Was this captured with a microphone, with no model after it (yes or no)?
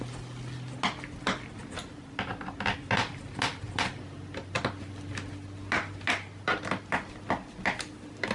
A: yes